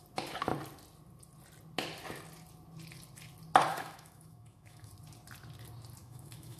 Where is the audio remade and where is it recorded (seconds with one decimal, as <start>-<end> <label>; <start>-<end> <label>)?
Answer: 0.0-3.7 recorded; 3.7-4.9 remade; 4.9-6.0 recorded; 6.0-6.6 remade